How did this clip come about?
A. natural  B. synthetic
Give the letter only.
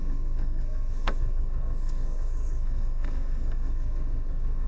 B